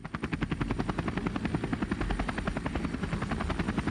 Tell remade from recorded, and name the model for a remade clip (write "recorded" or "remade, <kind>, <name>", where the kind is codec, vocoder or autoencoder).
recorded